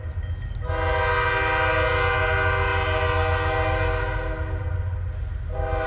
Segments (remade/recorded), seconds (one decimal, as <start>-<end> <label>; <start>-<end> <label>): 0.0-5.9 recorded